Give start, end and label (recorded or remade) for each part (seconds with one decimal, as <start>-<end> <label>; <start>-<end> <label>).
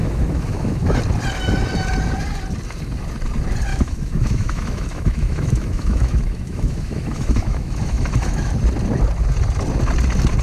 0.0-1.0 remade; 1.0-3.7 recorded; 3.7-8.5 remade; 8.5-10.4 recorded